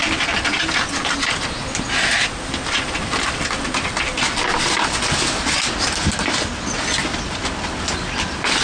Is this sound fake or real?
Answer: real